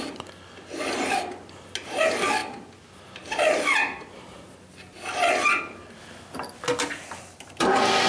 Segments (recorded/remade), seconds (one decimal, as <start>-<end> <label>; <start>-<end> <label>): 0.0-8.1 recorded